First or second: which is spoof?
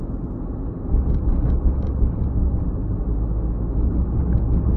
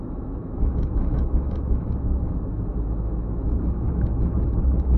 second